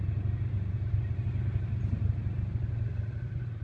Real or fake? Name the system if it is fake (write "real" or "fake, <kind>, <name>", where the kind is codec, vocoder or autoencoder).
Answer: real